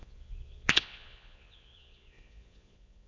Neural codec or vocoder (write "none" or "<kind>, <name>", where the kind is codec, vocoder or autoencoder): vocoder, Vocos